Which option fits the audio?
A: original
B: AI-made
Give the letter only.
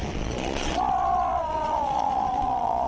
B